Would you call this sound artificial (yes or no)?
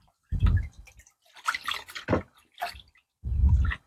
yes